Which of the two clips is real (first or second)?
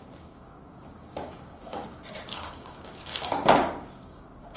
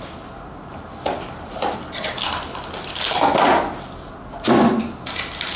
second